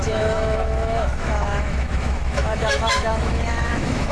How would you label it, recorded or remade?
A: remade